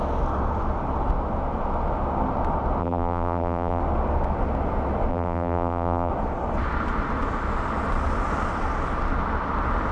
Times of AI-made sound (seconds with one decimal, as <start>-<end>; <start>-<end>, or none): 2.8-3.8; 5.1-6.1